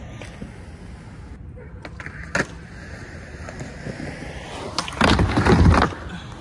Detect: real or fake real